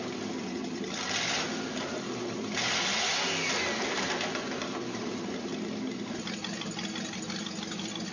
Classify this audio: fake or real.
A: real